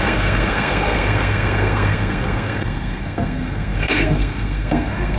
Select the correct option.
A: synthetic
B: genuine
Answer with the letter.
A